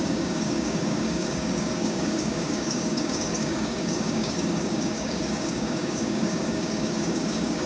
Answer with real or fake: fake